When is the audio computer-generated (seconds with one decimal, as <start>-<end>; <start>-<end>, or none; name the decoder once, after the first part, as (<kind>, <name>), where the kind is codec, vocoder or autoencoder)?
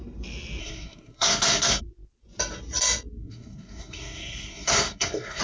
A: 0.6-1.8 (codec, SNAC); 3.2-5.4